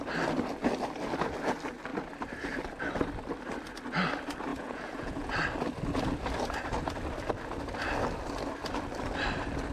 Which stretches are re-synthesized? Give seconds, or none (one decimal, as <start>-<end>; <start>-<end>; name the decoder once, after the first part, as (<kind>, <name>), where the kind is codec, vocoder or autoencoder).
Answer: 4.5-5.3 (vocoder, Vocos)